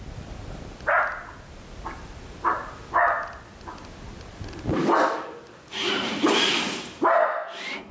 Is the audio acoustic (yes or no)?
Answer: yes